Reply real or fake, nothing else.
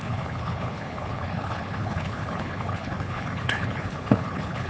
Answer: fake